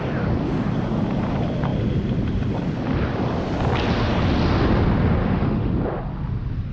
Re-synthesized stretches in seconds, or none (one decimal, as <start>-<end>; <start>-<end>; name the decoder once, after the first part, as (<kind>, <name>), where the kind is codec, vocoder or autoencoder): 5.2-5.7 (autoencoder, DAC-VAE)